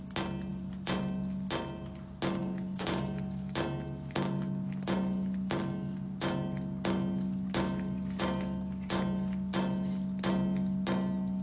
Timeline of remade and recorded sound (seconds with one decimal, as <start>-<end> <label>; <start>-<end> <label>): 0.0-0.5 recorded; 0.5-1.0 remade; 1.0-2.4 recorded; 2.4-3.0 remade; 3.0-11.4 recorded